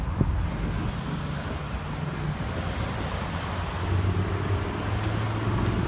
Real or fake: real